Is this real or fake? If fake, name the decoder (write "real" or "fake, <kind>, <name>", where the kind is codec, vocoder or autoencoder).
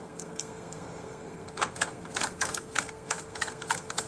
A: fake, codec, SNAC